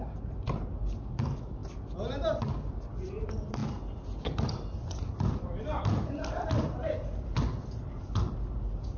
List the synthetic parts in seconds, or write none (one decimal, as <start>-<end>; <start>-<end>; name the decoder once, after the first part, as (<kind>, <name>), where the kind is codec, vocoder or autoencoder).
none